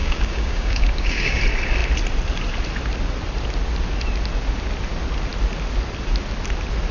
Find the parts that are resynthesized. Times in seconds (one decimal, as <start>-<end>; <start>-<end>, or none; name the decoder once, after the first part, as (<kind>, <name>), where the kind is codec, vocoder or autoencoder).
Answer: 0.0-1.4 (codec, DAC)